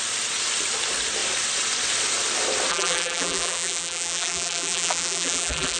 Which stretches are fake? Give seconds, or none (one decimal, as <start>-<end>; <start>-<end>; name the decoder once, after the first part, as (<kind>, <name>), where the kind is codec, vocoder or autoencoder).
2.7-5.8 (vocoder, BigVGAN v2)